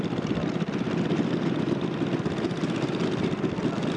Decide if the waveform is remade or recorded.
recorded